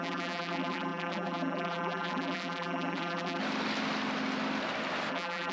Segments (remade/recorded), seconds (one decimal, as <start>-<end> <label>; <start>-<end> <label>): 0.0-3.4 remade; 3.4-5.1 recorded; 5.1-5.5 remade